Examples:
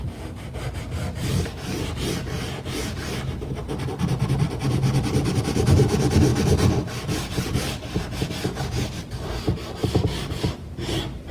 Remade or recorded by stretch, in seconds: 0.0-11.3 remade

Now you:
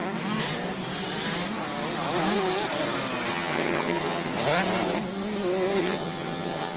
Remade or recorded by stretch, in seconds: 0.0-3.3 recorded; 3.3-4.3 remade; 4.3-5.8 recorded; 5.8-6.8 remade

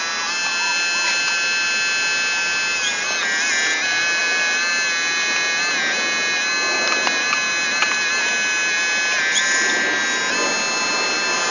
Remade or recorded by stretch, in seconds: 0.0-11.5 recorded

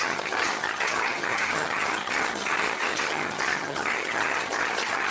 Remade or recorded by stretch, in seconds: 0.0-5.1 remade